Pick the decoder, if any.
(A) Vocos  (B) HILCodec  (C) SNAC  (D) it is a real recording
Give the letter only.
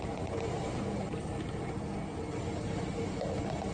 D